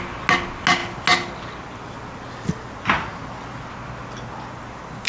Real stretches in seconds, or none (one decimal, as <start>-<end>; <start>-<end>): 0.0-5.1